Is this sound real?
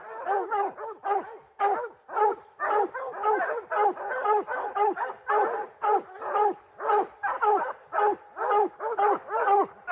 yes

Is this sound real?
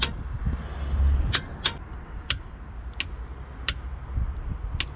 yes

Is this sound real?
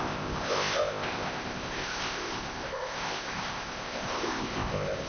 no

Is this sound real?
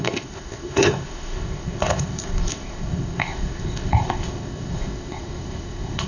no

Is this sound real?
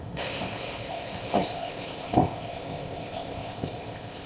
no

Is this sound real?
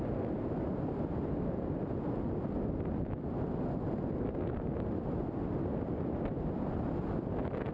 yes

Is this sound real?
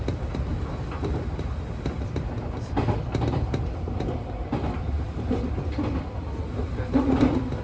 yes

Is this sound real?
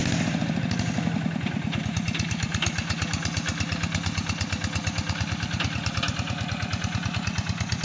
yes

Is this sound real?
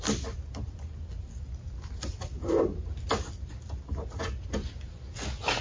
yes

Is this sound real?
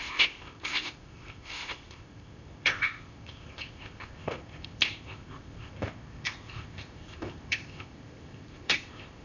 no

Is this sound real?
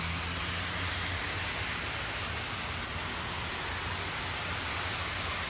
yes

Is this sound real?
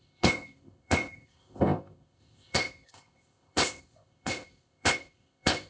no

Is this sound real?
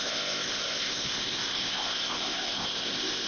no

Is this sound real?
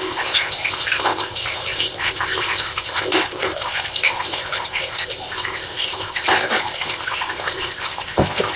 no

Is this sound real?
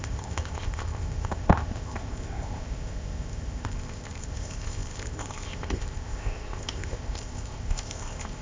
no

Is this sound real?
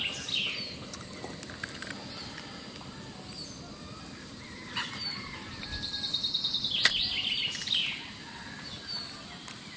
yes